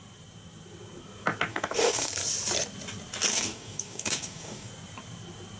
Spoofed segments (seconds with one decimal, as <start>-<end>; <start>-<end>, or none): 1.5-2.1; 3.3-4.7